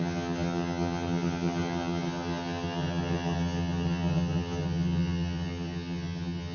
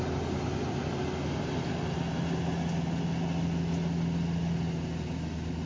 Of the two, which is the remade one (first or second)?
first